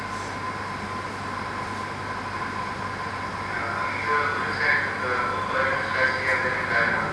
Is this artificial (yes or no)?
no